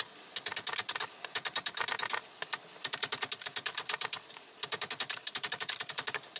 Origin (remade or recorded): recorded